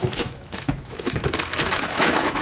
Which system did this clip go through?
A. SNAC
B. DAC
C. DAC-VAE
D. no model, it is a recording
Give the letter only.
C